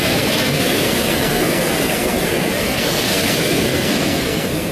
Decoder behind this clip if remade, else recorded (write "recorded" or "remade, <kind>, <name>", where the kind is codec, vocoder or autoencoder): remade, codec, SNAC